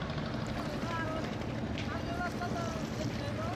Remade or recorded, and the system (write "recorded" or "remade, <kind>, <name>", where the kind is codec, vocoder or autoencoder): recorded